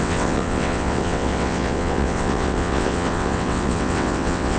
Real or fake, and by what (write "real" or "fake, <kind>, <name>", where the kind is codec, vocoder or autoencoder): fake, vocoder, WaveNeXt